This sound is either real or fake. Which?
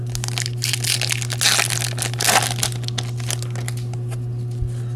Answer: real